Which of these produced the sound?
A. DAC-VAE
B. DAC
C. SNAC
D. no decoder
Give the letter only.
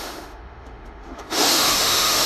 A